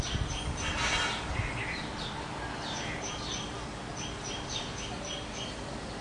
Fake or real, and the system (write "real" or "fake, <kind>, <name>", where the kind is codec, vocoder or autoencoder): real